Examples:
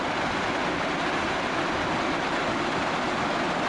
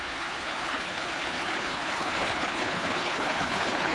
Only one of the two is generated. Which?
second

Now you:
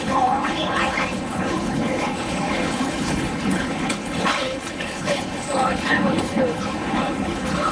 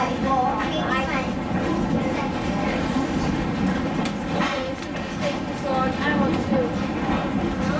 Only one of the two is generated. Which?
first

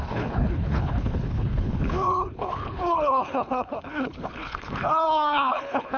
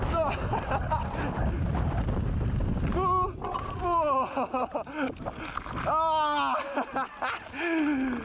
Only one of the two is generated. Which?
first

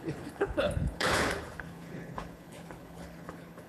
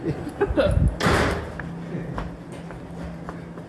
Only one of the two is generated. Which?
first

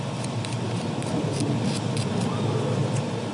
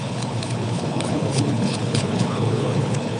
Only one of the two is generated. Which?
second